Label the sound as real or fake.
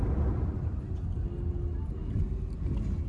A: real